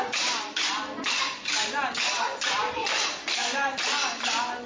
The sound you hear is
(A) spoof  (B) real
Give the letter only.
B